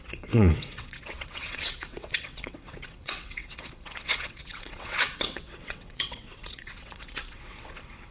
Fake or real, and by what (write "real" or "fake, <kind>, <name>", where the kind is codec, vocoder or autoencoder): fake, vocoder, WaveNeXt